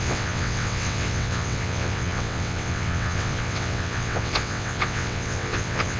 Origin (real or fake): fake